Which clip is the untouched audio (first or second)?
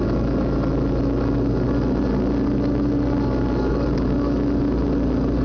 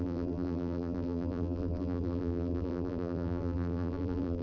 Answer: first